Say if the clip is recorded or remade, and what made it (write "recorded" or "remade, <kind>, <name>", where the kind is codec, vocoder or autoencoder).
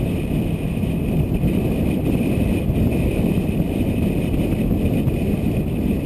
recorded